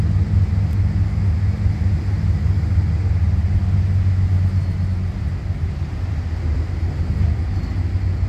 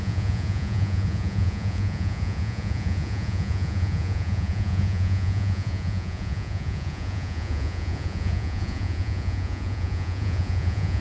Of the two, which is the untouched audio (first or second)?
first